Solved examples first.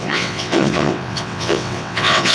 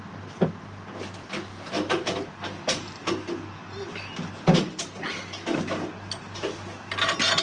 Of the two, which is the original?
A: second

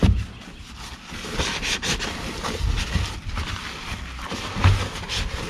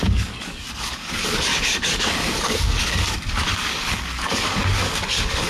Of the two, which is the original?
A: first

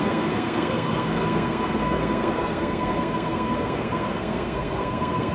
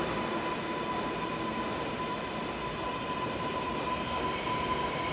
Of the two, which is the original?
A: second